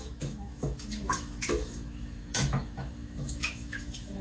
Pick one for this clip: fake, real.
fake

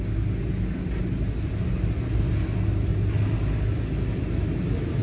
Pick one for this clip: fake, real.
real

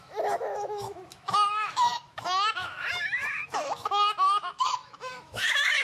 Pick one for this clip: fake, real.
fake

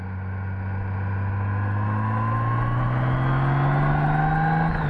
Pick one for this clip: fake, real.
real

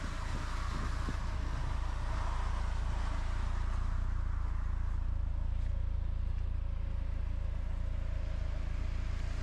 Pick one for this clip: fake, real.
real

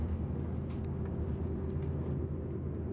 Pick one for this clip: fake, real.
real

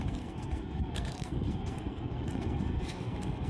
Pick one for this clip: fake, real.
fake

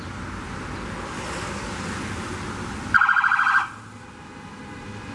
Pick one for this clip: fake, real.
real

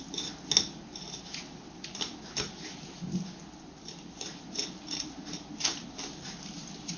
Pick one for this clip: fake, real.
real